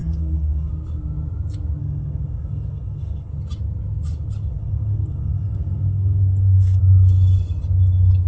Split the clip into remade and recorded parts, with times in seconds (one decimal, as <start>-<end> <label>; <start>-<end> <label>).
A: 0.0-0.7 remade; 0.7-1.8 recorded; 1.8-3.3 remade; 3.3-4.6 recorded; 4.6-6.8 remade; 6.8-8.3 recorded